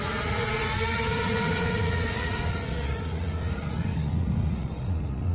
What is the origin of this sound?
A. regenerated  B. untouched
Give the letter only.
A